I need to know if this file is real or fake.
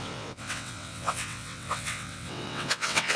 fake